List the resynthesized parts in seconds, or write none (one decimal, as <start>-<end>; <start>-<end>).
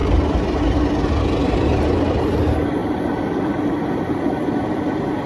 0.0-1.0; 1.4-2.0; 2.8-5.3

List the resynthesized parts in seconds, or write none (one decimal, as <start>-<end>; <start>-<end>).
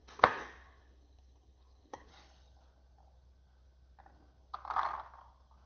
0.0-2.1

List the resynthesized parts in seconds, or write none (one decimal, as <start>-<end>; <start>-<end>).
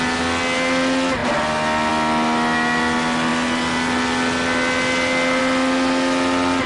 none